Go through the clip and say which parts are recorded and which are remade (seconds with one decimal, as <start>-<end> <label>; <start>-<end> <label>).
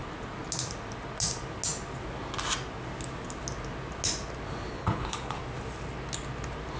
0.0-4.7 recorded; 4.7-5.4 remade; 5.4-6.8 recorded